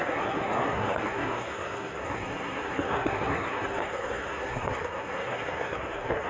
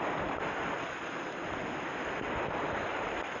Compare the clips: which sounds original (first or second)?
second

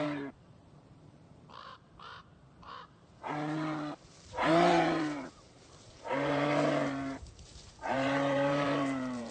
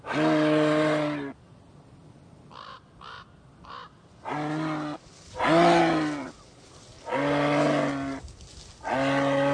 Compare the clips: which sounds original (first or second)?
second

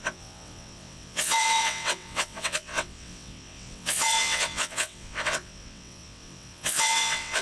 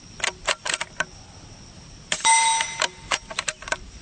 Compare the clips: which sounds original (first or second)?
second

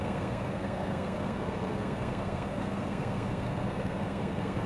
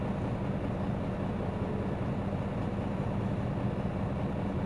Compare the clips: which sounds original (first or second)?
second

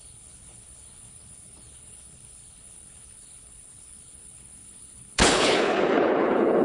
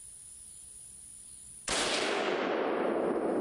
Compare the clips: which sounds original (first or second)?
second